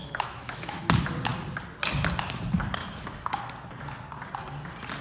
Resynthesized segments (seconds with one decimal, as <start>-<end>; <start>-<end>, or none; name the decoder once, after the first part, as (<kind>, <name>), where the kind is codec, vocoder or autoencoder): 0.0-0.8 (autoencoder, DAC-VAE); 2.8-3.4